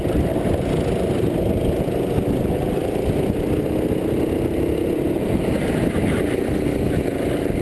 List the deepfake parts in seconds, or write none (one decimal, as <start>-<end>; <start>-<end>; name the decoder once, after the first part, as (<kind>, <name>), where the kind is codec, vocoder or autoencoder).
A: none